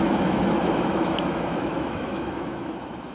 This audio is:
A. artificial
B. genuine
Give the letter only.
A